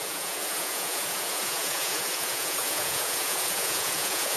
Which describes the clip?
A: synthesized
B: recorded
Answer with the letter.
A